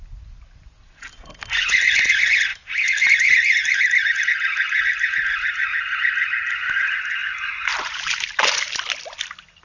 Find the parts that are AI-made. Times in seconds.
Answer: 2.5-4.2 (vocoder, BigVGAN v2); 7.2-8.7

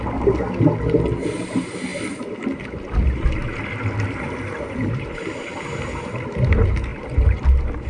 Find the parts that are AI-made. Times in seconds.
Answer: none

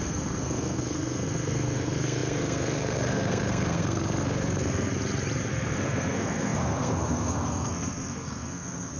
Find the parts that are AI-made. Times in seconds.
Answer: 0.0-4.9 (codec, SNAC); 5.5-9.0

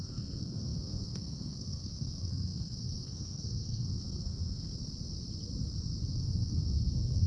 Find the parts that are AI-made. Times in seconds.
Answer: 0.0-4.7 (codec, SNAC); 6.1-7.3

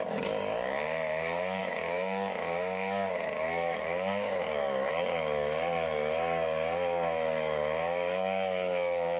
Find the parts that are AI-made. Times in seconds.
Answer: 0.0-9.2 (codec, DAC)

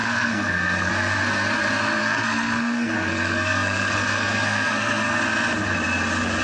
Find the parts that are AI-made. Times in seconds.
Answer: 0.0-0.9 (codec, SNAC); 2.0-5.2

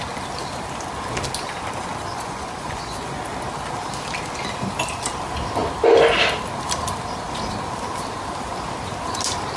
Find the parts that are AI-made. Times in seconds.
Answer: 2.1-3.2 (vocoder, Vocos)

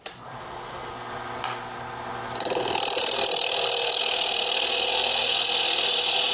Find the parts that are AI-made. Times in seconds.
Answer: none